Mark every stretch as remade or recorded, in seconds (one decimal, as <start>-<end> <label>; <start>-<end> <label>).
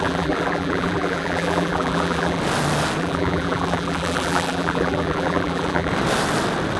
0.0-2.4 remade; 2.4-3.0 recorded; 3.0-5.9 remade; 5.9-6.8 recorded